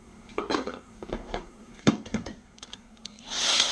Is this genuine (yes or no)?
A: no